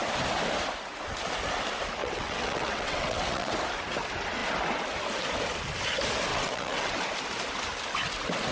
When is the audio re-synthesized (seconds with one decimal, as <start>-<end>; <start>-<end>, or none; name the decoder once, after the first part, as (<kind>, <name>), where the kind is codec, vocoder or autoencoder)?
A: 2.0-3.5 (vocoder, WaveNeXt); 6.3-6.9